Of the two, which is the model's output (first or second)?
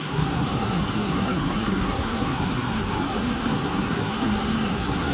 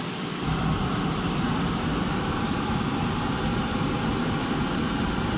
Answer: first